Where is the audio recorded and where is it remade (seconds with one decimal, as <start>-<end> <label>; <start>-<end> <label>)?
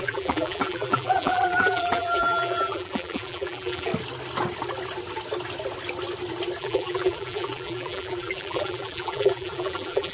0.0-3.9 remade; 3.9-6.6 recorded; 6.6-10.1 remade